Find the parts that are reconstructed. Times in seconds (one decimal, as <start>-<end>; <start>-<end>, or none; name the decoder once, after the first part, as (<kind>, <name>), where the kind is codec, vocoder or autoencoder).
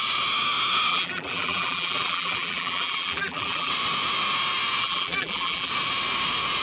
0.9-3.7 (vocoder, BigVGAN v2); 4.8-5.7